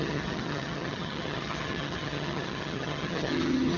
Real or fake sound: fake